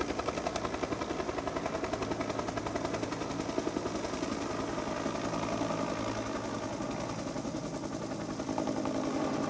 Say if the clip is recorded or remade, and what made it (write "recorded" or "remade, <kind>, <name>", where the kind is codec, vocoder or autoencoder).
recorded